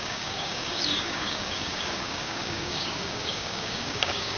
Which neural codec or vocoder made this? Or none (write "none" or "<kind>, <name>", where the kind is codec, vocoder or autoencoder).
codec, DAC